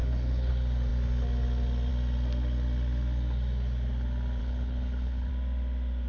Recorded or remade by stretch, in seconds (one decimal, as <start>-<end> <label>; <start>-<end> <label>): 0.0-0.5 remade; 0.5-4.4 recorded; 4.4-5.3 remade; 5.3-6.1 recorded